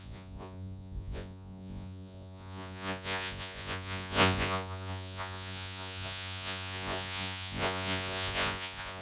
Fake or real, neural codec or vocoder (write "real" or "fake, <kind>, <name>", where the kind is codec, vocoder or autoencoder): fake, vocoder, Vocos